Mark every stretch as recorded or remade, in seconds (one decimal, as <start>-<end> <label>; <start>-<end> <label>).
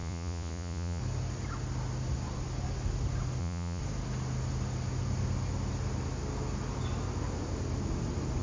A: 0.0-1.0 remade; 1.0-3.4 recorded; 3.4-3.8 remade; 3.8-8.4 recorded